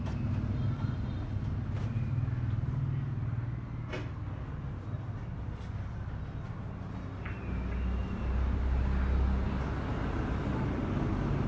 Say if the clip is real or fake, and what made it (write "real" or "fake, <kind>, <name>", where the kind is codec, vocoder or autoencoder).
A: real